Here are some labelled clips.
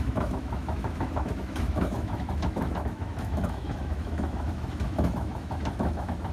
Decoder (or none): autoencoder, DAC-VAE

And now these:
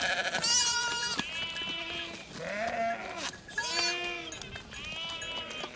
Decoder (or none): none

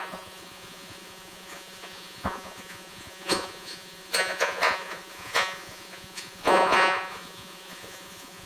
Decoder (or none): vocoder, Vocos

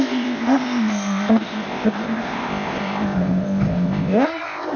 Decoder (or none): codec, ZipCodec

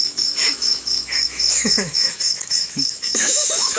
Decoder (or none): autoencoder, DAC-VAE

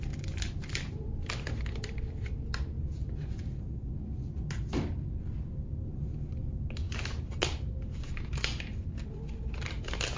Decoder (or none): none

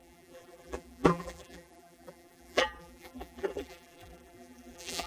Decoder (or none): vocoder, BigVGAN v2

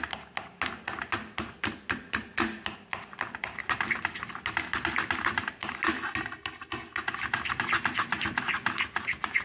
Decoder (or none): none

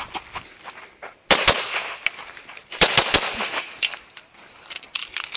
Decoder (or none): none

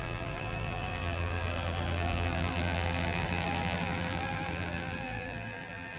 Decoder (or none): vocoder, BigVGAN v2